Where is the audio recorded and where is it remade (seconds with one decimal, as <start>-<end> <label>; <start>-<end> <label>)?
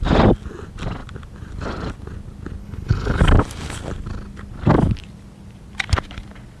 0.0-2.6 recorded; 2.6-3.2 remade; 3.2-6.6 recorded